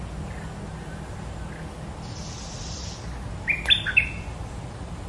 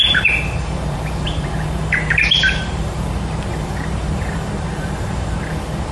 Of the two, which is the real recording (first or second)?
first